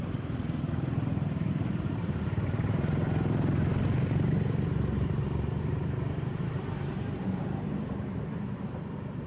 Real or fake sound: fake